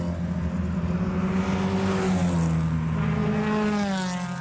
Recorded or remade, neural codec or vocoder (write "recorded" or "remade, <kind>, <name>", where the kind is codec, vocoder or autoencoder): recorded